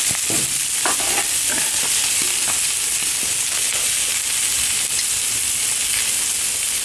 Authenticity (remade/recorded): recorded